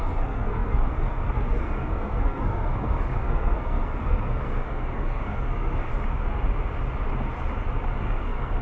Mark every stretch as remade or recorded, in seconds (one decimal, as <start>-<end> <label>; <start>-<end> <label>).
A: 0.0-5.9 remade; 5.9-8.0 recorded; 8.0-8.6 remade